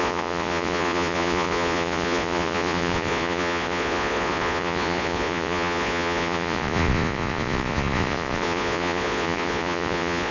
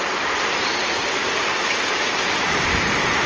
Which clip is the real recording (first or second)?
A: second